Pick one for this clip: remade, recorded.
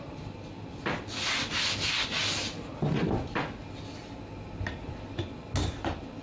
recorded